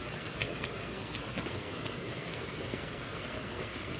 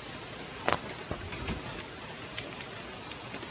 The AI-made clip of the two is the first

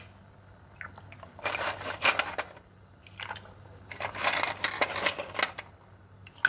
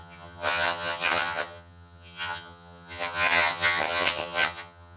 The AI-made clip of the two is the second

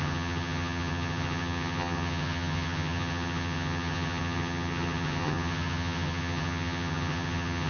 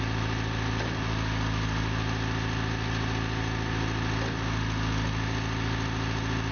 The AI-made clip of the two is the first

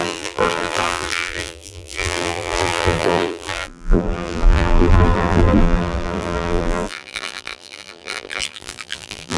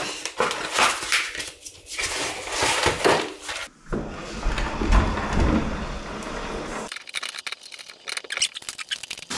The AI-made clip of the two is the first